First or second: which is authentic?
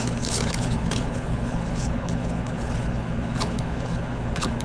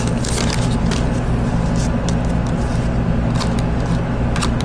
second